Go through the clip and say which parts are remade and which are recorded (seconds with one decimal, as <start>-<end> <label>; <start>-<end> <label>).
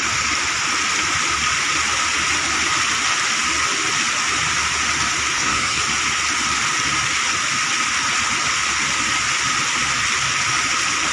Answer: 0.0-5.3 recorded; 5.3-5.8 remade; 5.8-11.1 recorded